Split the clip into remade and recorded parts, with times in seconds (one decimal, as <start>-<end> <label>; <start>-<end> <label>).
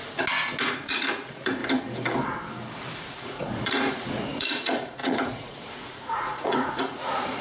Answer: 0.0-0.6 recorded; 0.6-1.6 remade; 1.6-3.0 recorded; 3.0-7.4 remade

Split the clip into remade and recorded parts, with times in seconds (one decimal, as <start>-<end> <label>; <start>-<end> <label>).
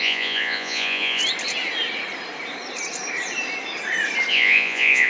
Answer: 0.0-1.2 remade; 1.2-4.3 recorded; 4.3-5.1 remade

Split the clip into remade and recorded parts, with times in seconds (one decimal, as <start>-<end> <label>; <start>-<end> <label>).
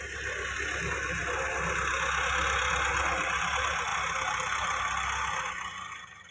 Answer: 0.0-6.3 recorded